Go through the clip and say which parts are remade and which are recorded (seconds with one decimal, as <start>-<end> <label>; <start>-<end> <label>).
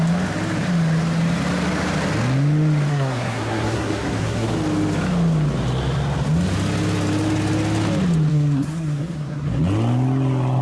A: 0.0-2.9 recorded; 2.9-4.5 remade; 4.5-8.3 recorded; 8.3-9.6 remade; 9.6-10.6 recorded